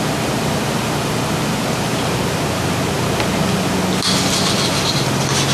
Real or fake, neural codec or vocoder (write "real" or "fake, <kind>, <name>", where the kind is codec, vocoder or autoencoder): real